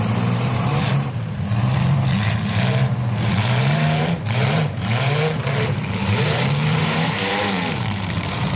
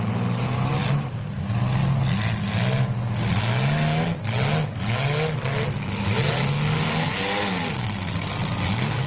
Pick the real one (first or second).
second